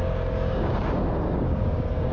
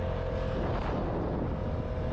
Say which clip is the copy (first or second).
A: first